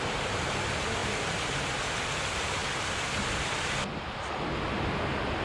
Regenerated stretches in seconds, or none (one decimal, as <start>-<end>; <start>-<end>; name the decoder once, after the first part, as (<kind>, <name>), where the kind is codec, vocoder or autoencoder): none